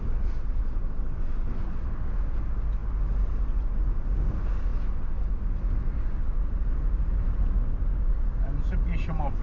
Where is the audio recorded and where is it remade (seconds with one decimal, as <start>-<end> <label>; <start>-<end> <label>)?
0.0-9.4 recorded